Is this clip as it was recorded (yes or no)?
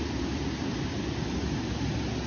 yes